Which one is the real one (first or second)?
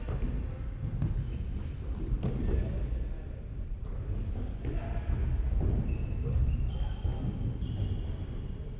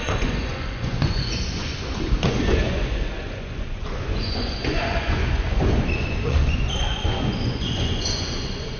first